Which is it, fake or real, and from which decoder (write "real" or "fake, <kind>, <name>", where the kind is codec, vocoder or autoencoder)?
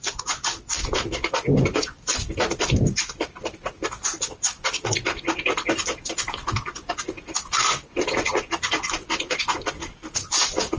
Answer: real